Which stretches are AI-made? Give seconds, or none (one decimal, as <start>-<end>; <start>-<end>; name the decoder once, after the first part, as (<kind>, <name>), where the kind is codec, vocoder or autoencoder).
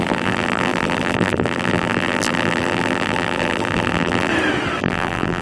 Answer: 0.0-4.3 (vocoder, BigVGAN v2); 4.8-5.4